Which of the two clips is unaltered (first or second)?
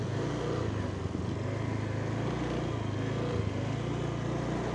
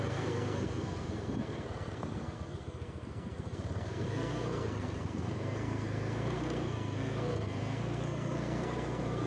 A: first